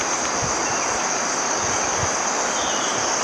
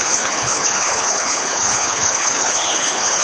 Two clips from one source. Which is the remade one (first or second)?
second